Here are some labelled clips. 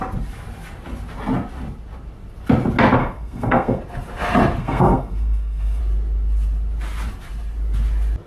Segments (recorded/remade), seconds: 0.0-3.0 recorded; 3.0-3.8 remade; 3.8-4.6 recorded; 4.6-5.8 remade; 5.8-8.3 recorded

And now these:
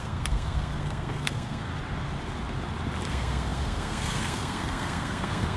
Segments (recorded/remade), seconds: 0.0-1.7 remade; 1.7-3.1 recorded; 3.1-5.6 remade

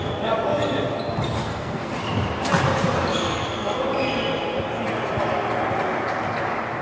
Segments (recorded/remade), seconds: 0.0-1.4 recorded; 1.4-1.9 remade; 1.9-3.1 recorded; 3.1-3.8 remade; 3.8-6.8 recorded